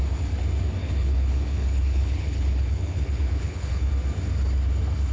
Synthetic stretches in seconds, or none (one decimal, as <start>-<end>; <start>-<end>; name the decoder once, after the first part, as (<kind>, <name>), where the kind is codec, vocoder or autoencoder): 0.8-3.9 (codec, HILCodec)